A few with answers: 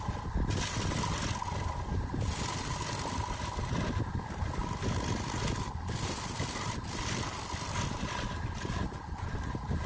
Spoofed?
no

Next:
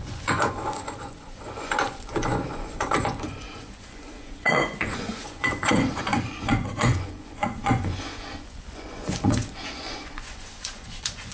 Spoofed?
yes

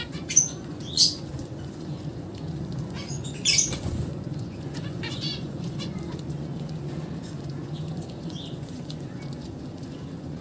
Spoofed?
yes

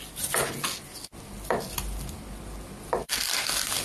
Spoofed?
no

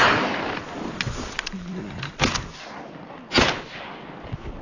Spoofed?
no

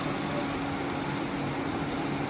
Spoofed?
no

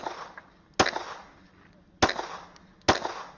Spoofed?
no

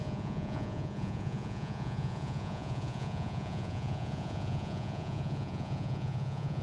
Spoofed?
yes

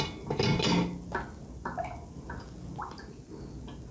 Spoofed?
no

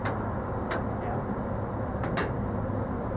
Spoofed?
no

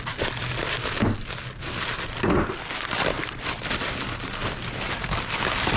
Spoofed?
no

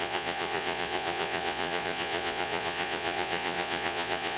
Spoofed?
yes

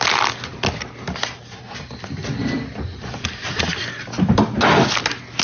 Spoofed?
no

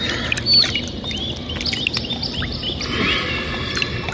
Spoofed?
no